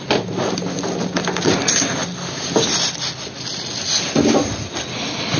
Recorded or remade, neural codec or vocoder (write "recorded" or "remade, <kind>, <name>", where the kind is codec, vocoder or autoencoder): remade, vocoder, BigVGAN v2